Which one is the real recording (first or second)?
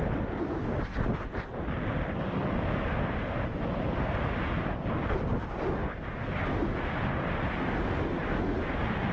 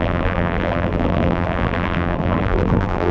first